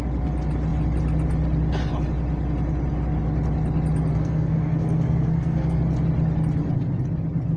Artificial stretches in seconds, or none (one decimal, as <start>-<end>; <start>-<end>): 4.1-5.8